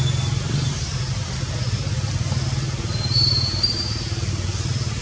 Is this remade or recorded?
recorded